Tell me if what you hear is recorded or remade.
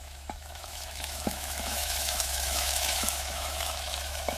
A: remade